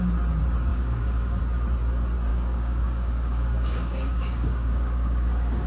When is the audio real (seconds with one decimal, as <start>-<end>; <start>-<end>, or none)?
0.0-0.7; 1.4-2.3